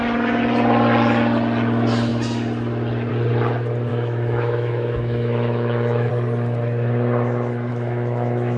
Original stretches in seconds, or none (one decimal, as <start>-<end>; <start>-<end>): 0.0-3.9; 6.1-7.7